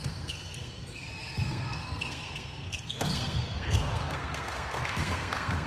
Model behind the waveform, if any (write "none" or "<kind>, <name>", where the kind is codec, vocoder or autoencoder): codec, SNAC